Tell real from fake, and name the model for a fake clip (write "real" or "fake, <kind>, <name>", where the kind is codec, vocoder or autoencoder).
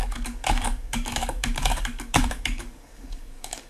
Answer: fake, codec, DAC